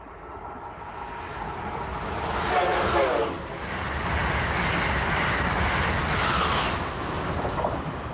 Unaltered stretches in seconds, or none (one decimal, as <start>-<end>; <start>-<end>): 0.0-8.1